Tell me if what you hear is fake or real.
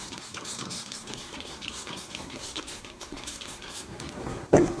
fake